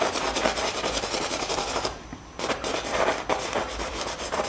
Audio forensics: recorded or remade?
remade